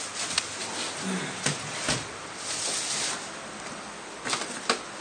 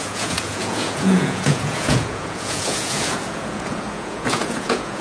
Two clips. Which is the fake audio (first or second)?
second